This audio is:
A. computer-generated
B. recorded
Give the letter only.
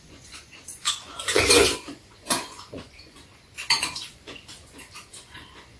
A